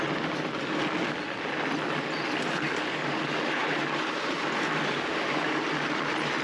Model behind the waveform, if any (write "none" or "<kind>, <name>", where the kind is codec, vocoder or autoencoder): none